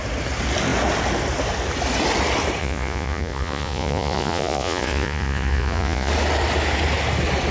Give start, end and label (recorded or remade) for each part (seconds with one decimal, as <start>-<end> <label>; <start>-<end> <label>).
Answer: 0.0-2.6 recorded; 2.6-6.1 remade; 6.1-7.5 recorded